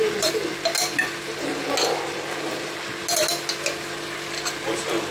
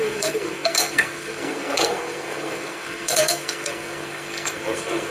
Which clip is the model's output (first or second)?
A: second